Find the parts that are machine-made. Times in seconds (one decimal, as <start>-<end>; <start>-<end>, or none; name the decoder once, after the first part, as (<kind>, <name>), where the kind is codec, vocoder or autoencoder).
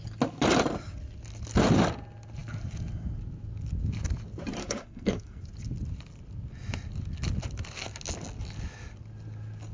4.6-5.4 (codec, SNAC)